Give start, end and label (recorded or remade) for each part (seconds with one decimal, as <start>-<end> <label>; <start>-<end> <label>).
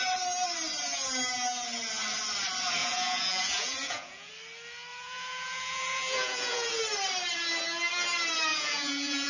0.0-2.8 recorded; 2.8-4.3 remade; 4.3-4.9 recorded; 4.9-6.7 remade; 6.7-8.5 recorded; 8.5-9.3 remade